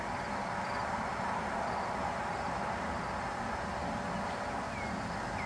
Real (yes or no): yes